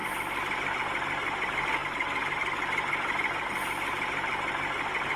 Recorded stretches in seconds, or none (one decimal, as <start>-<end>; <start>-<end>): 0.0-5.2